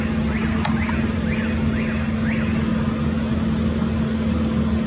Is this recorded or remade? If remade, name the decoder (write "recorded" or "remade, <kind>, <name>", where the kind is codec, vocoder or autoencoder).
recorded